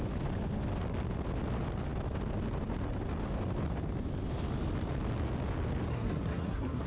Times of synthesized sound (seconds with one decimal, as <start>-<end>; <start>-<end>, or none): 5.9-6.9